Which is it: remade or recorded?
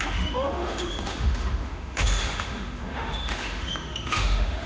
remade